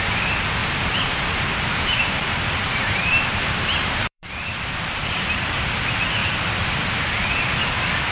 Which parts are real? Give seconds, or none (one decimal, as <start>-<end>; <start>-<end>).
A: 0.0-0.6; 5.5-6.2; 6.9-8.1